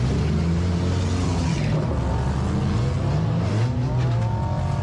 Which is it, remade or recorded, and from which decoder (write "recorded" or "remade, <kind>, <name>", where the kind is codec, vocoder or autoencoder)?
recorded